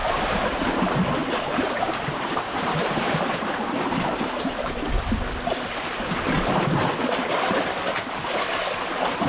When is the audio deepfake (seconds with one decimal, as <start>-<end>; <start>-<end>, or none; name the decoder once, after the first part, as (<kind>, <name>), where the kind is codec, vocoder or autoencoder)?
0.0-0.6 (vocoder, BigVGAN v2); 1.2-4.8